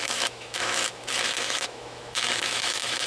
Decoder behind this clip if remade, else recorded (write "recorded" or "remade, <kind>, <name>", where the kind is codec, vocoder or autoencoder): remade, autoencoder, DAC-VAE